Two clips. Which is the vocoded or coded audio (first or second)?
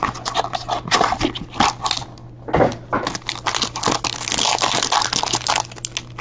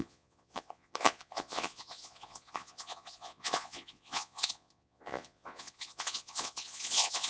second